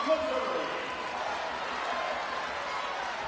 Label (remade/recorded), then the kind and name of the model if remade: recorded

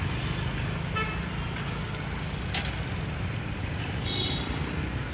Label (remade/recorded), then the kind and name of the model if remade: recorded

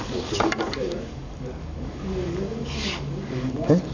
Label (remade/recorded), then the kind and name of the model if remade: remade, codec, DAC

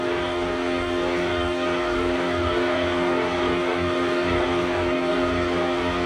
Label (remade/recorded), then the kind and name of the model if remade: remade, codec, DAC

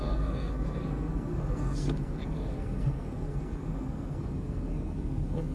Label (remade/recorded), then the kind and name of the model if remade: remade, codec, SNAC